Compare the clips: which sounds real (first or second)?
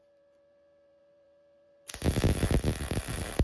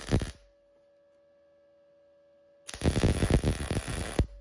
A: second